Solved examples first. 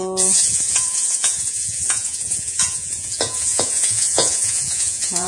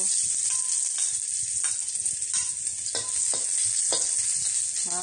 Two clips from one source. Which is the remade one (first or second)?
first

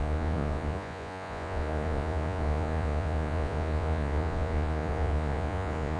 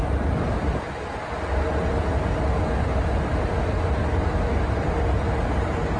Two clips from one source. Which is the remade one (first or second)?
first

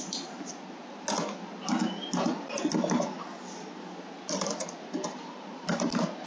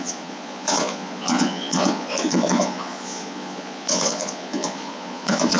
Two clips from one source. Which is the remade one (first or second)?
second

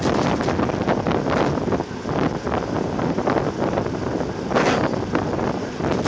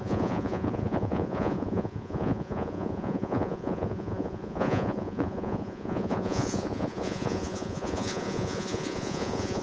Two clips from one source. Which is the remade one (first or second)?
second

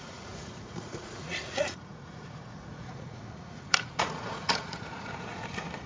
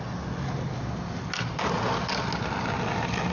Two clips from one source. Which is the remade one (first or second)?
first